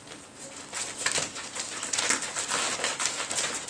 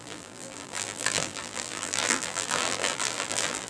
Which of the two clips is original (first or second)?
first